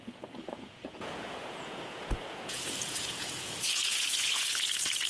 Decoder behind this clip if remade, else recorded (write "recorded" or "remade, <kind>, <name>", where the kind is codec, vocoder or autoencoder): remade, vocoder, Vocos